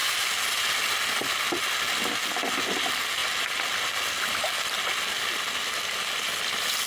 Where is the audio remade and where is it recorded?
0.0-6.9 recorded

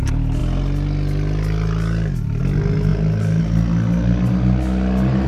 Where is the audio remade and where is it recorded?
0.0-5.3 recorded